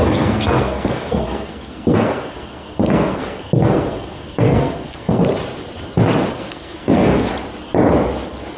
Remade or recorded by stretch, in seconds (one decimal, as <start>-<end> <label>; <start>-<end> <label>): 0.0-5.2 remade; 5.2-6.3 recorded; 6.3-7.3 remade; 7.3-8.6 recorded

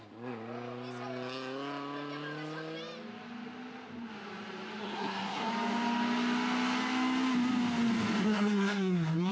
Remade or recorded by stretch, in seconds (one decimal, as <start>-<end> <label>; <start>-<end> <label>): 0.0-4.8 recorded; 4.8-5.5 remade; 5.5-8.2 recorded; 8.2-9.3 remade

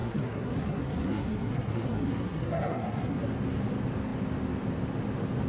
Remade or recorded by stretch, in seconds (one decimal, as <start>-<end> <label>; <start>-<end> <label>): 0.0-3.3 remade; 3.3-5.5 recorded